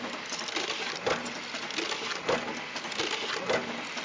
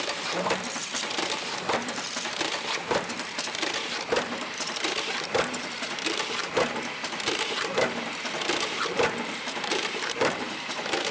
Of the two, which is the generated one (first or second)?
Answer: second